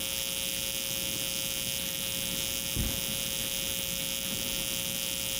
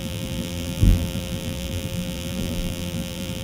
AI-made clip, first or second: second